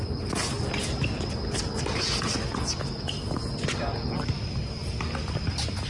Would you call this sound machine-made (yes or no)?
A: no